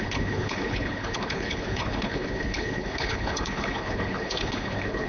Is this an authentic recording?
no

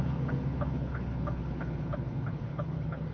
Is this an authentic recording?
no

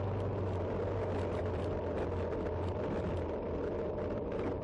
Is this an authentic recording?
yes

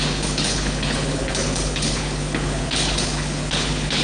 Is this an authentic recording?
no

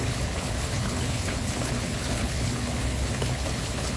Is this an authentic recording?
no